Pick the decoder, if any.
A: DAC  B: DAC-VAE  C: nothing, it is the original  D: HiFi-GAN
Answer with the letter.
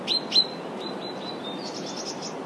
C